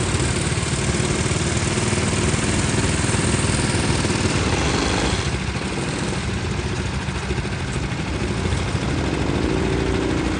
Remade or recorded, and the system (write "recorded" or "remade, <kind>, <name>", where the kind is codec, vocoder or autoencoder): recorded